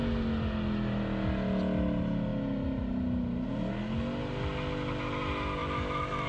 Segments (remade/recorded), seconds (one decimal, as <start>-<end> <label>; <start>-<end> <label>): 0.0-5.6 recorded; 5.6-6.3 remade